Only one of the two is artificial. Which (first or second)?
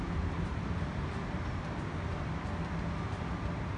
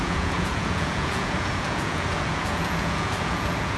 second